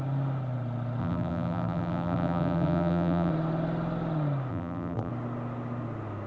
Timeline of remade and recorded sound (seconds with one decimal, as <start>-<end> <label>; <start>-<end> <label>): 0.0-1.0 recorded; 1.0-3.3 remade; 3.3-4.5 recorded; 4.5-5.1 remade; 5.1-6.3 recorded